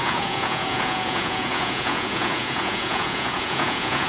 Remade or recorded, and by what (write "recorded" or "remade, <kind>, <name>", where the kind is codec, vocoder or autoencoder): remade, vocoder, Vocos